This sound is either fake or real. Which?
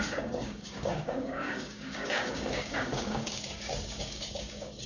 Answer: fake